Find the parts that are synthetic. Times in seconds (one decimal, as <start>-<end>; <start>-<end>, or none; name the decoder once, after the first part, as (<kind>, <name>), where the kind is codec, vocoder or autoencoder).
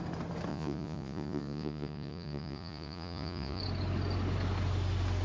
0.5-3.6 (vocoder, Vocos)